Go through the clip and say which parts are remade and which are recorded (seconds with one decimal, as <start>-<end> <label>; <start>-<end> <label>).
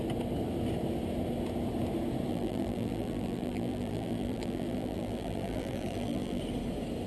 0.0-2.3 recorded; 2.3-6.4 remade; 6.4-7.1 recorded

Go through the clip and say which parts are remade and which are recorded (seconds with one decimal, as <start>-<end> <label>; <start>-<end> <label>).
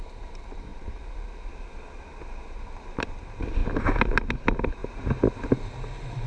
0.0-6.3 recorded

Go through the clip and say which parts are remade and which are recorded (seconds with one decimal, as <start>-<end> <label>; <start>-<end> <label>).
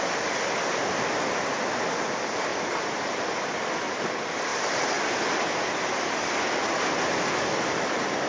0.0-2.5 recorded; 2.5-3.2 remade; 3.2-8.3 recorded